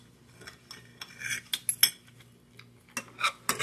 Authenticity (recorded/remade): recorded